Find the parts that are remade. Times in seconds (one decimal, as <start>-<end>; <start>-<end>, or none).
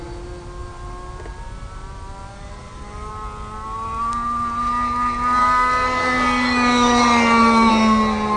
2.3-3.1; 5.4-7.7